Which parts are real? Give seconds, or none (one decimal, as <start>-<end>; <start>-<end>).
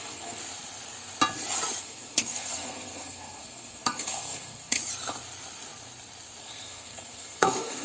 0.4-1.8; 4.8-6.4